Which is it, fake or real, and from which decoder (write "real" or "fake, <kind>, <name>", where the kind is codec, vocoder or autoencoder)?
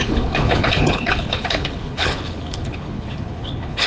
fake, codec, HILCodec